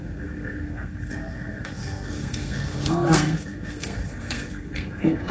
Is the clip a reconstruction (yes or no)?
yes